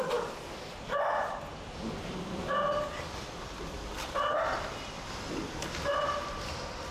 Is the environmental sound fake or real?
real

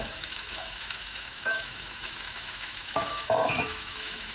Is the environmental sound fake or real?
fake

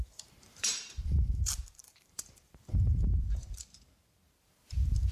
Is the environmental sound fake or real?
fake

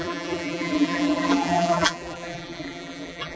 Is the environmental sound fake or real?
fake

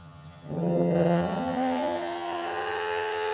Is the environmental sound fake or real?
fake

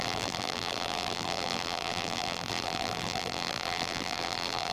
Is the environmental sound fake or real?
fake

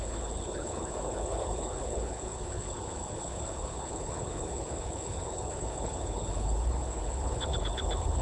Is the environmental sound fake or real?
fake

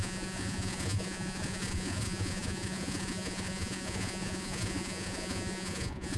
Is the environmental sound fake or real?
fake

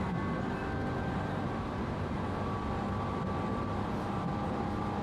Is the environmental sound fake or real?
real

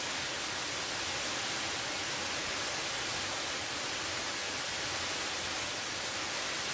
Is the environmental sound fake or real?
real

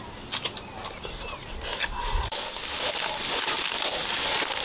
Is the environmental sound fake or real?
real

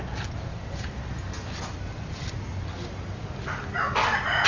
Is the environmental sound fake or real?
real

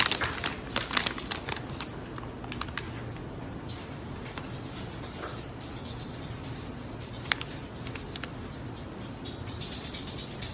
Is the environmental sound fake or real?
real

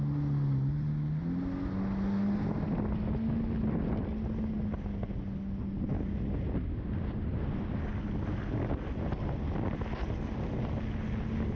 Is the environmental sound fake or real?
real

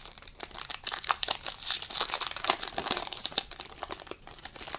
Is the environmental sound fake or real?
fake